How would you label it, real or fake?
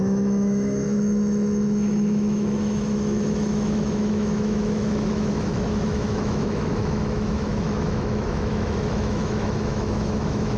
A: fake